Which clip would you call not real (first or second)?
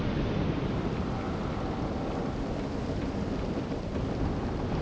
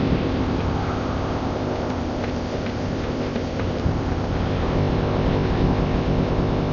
second